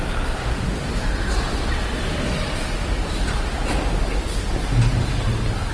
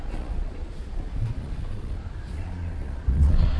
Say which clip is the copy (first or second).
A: second